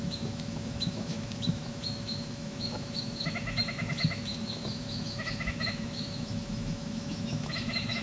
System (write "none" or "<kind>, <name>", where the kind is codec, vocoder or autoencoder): autoencoder, DAC-VAE